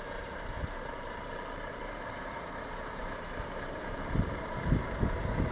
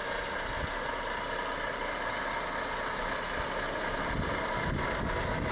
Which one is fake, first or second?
first